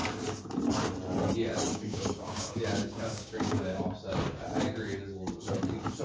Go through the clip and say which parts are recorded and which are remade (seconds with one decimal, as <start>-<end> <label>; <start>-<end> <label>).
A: 0.0-1.7 recorded; 1.7-3.8 remade; 3.8-6.0 recorded